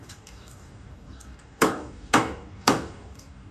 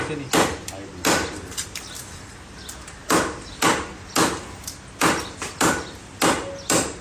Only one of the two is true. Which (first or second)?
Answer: second